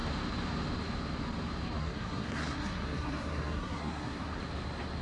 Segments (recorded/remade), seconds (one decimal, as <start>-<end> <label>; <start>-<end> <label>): 0.0-1.8 recorded; 1.8-4.4 remade; 4.4-5.0 recorded